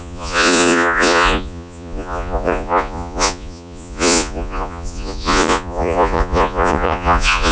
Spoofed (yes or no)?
yes